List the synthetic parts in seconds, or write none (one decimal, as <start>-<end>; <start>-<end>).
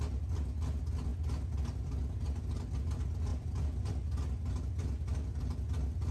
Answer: 3.3-3.8